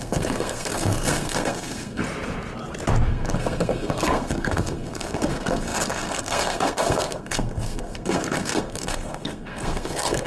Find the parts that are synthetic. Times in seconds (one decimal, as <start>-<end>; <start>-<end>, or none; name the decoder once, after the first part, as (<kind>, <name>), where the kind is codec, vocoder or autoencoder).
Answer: 0.0-2.0 (codec, SNAC); 3.1-10.3